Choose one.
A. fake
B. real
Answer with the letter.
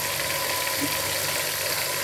B